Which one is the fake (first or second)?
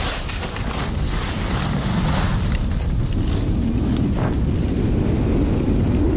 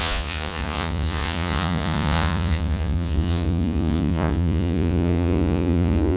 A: second